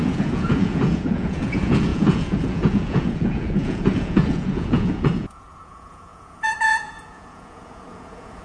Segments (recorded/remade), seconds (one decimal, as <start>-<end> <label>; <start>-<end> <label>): 0.0-8.4 remade